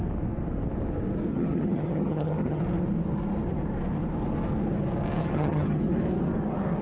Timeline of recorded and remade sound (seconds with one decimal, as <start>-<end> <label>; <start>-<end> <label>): 0.0-1.3 recorded; 1.3-2.6 remade; 2.6-5.2 recorded; 5.2-5.8 remade; 5.8-6.8 recorded